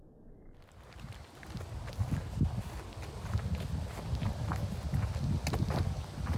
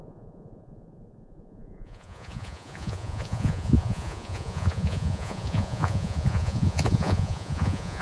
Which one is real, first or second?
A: first